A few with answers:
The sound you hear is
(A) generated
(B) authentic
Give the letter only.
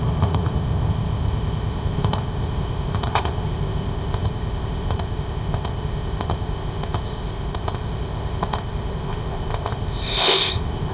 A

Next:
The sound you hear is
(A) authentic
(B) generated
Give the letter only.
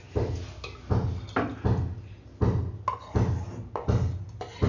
A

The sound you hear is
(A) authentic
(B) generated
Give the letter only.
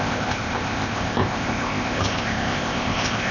B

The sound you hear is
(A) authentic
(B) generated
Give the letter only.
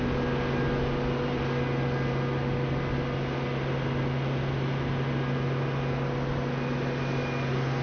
A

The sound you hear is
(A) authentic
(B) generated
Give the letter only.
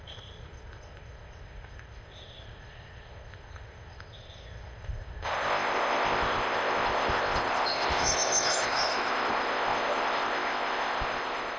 B